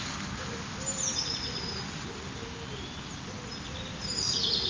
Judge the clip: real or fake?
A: real